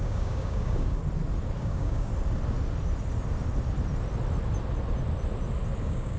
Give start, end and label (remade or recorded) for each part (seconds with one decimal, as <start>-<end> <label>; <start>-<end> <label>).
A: 0.0-1.0 remade; 1.0-1.6 recorded; 1.6-2.1 remade; 2.1-5.8 recorded; 5.8-6.2 remade